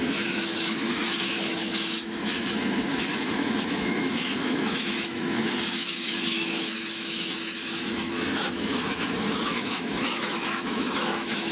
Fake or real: fake